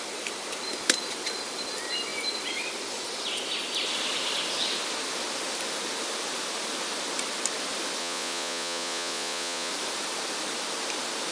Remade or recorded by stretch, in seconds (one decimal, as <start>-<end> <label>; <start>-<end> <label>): 0.0-8.0 recorded; 8.0-9.7 remade; 9.7-11.3 recorded